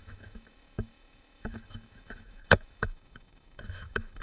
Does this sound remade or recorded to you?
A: remade